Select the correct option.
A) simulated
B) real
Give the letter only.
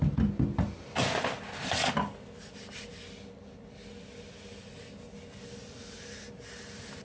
B